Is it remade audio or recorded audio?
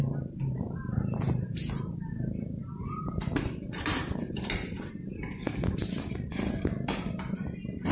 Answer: remade